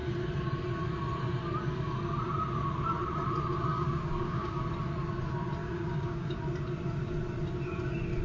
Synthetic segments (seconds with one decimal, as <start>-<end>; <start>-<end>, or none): 3.7-4.6; 5.6-6.4